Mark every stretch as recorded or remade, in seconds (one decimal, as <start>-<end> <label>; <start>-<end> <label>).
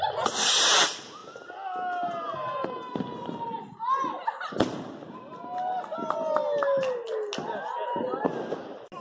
0.0-9.0 recorded